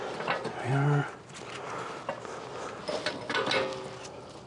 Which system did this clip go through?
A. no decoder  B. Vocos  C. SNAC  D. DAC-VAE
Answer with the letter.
A